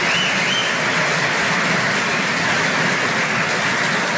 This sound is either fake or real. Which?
real